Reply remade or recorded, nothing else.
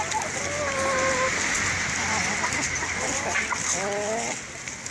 recorded